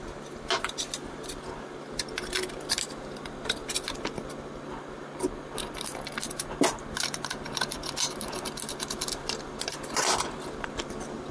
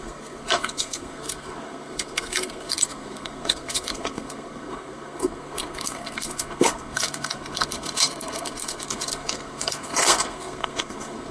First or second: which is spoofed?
second